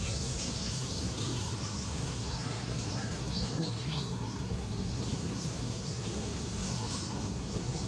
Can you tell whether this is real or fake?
fake